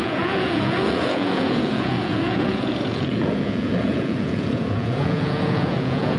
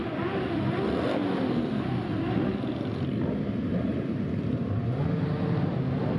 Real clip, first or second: second